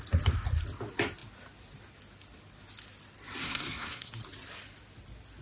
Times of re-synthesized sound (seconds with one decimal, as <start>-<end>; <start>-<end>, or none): 3.4-4.1